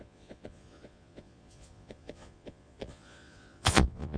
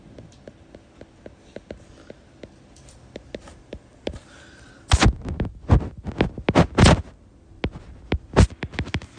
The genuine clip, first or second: second